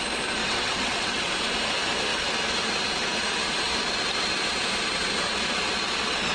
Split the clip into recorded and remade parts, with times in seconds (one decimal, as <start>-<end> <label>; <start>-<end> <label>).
0.0-0.4 recorded; 0.4-1.3 remade; 1.3-6.3 recorded